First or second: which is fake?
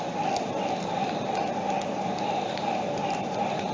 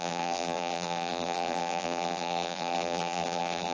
second